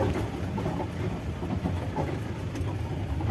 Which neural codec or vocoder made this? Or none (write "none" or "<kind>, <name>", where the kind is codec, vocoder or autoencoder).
none